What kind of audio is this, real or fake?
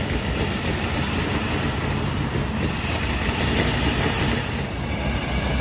real